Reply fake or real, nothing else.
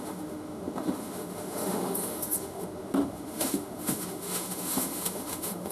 fake